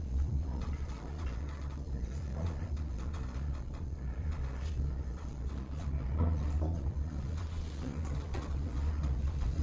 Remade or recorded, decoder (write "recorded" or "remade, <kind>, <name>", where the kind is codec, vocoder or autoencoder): remade, vocoder, Vocos